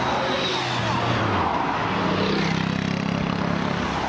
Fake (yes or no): no